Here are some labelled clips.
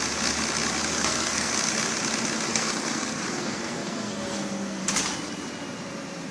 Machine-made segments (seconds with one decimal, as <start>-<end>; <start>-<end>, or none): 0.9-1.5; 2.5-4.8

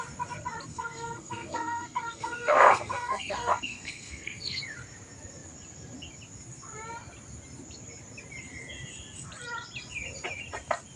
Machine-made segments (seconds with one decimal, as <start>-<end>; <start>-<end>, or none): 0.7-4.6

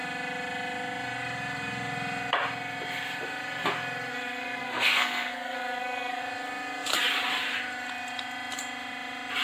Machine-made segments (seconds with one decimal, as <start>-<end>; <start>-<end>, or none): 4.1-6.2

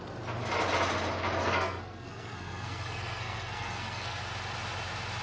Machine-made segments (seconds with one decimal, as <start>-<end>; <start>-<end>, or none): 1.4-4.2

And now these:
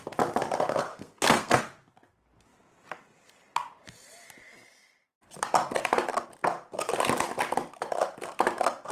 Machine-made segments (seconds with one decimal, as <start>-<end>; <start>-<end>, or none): 0.9-1.6

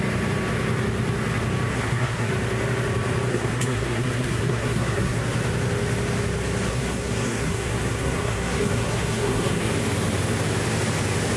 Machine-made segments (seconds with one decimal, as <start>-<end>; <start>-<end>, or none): 1.7-2.3; 3.3-5.2; 6.7-9.7

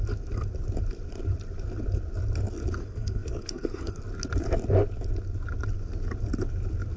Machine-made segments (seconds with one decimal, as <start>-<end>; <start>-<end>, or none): 2.8-4.0